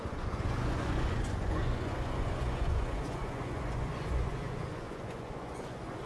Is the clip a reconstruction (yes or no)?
yes